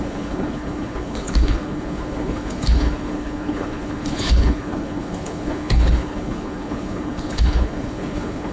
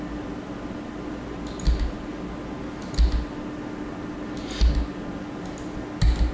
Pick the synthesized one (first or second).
first